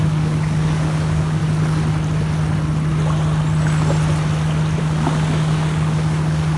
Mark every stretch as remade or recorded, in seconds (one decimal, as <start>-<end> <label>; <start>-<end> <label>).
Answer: 0.0-1.4 remade; 1.4-4.8 recorded; 4.8-6.6 remade